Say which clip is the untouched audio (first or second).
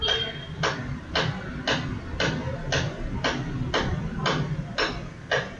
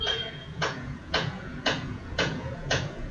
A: first